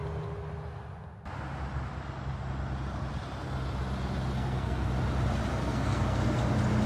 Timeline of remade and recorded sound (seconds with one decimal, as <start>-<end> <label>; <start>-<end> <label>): 0.0-4.3 recorded; 4.3-4.9 remade; 4.9-5.5 recorded; 5.5-6.4 remade; 6.4-6.9 recorded